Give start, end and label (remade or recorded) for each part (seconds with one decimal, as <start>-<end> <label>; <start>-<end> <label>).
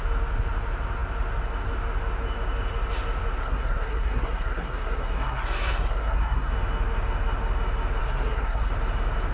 0.0-3.4 recorded; 3.4-6.5 remade; 6.5-8.0 recorded; 8.0-8.7 remade; 8.7-9.3 recorded